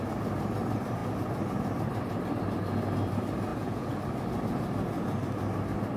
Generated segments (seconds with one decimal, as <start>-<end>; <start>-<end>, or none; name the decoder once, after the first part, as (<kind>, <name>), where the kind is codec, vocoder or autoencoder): 3.5-4.0 (vocoder, Vocos)